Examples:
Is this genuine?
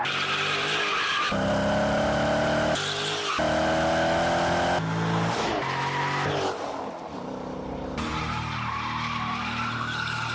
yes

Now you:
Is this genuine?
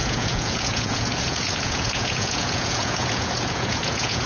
no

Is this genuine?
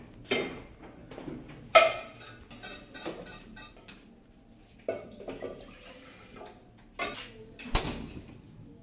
yes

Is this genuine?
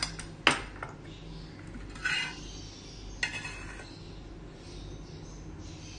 yes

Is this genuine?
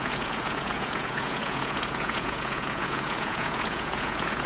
no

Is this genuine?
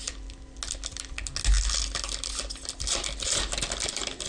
yes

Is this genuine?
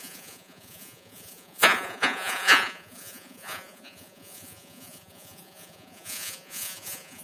no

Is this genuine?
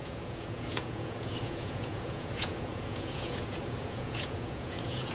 no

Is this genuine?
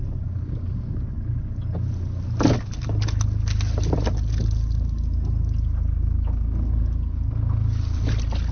yes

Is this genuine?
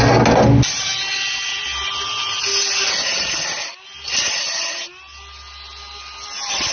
yes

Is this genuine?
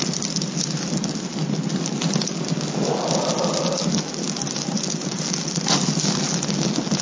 yes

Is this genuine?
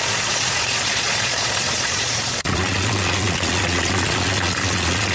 no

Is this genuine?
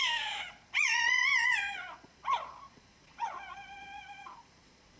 no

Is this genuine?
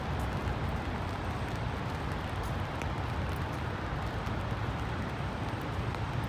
yes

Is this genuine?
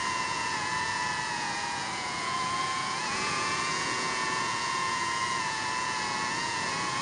no